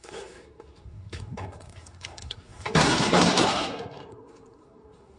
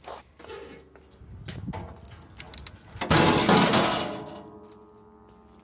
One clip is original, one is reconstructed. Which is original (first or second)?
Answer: second